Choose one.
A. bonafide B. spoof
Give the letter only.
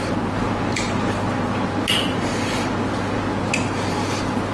A